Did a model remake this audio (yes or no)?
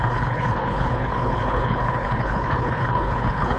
yes